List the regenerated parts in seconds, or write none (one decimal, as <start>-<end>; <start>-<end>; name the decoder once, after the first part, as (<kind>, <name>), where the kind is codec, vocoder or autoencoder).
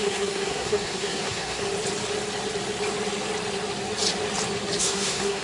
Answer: 0.0-1.6 (codec, SNAC); 4.8-5.4